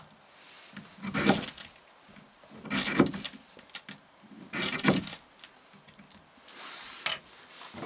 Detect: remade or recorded recorded